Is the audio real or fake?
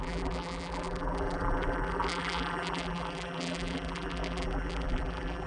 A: fake